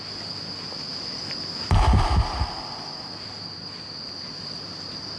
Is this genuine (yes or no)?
yes